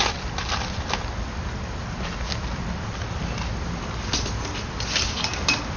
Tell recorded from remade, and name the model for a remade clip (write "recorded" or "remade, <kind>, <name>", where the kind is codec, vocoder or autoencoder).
recorded